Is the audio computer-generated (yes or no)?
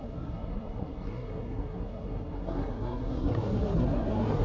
yes